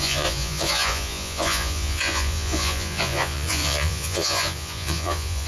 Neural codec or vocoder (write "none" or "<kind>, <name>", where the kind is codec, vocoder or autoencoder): vocoder, Vocos